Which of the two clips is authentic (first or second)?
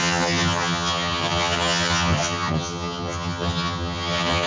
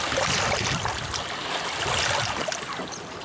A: second